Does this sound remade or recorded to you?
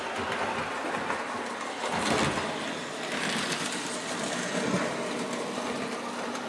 recorded